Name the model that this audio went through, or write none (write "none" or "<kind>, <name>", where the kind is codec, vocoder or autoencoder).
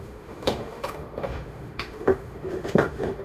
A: autoencoder, DAC-VAE